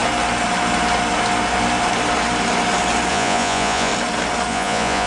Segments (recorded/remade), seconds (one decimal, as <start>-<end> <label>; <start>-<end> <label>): 0.0-3.1 recorded; 3.1-3.9 remade; 3.9-4.5 recorded; 4.5-5.1 remade